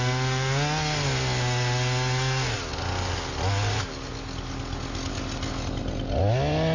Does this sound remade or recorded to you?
recorded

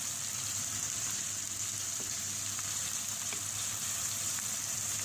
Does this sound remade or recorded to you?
remade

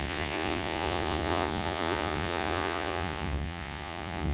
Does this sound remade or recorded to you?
remade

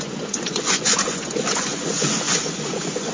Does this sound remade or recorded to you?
remade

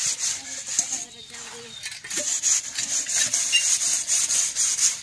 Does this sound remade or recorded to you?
recorded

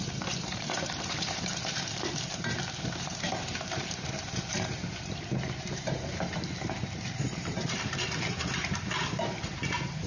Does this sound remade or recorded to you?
remade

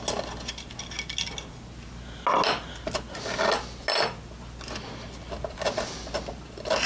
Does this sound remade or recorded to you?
recorded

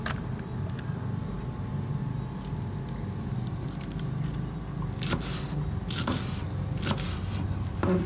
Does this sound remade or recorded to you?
recorded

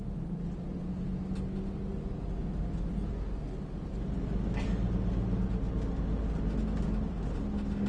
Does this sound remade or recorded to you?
recorded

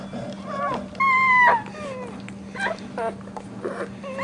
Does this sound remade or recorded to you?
recorded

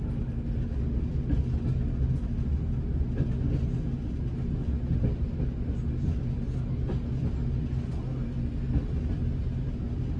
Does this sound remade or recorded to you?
recorded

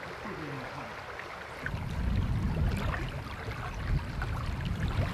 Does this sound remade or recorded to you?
recorded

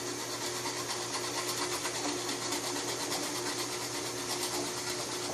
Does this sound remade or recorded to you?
recorded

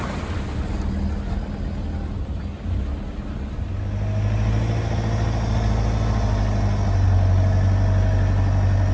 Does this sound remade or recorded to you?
recorded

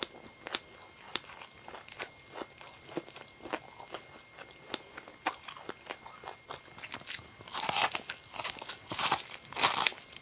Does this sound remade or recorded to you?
recorded